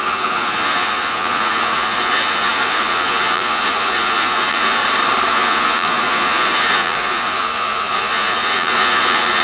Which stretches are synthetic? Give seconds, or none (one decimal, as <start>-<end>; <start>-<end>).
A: 0.0-4.8; 5.3-9.4